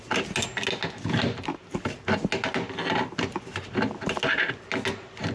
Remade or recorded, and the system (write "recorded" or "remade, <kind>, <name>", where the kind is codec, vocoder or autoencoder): recorded